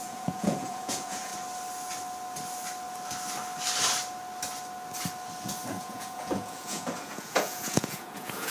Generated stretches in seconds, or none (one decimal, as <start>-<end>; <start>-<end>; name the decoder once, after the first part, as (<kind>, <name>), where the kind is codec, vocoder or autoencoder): 0.0-1.3 (vocoder, Vocos); 5.8-8.5